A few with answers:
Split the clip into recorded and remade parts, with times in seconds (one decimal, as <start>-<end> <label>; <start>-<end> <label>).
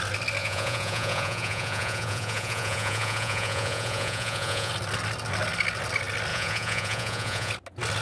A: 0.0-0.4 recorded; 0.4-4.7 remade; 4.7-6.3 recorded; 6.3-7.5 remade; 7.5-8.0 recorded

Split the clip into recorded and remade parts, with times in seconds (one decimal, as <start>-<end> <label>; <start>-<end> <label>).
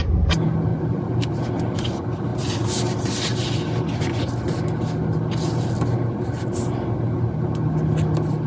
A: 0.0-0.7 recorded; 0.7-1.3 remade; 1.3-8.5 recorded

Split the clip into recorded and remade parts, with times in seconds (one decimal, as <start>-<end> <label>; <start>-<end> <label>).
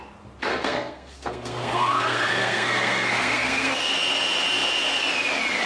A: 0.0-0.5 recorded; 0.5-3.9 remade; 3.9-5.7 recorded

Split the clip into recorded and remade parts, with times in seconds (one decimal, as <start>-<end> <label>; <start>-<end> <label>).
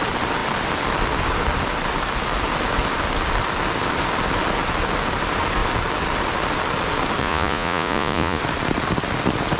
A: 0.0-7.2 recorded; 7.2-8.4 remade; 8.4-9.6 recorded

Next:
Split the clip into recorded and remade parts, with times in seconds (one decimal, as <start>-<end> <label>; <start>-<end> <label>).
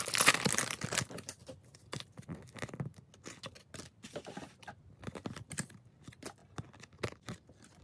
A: 0.0-7.8 recorded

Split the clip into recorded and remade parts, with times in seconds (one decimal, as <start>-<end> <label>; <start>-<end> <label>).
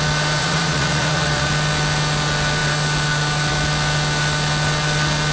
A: 0.0-0.4 recorded; 0.4-1.5 remade; 1.5-5.3 recorded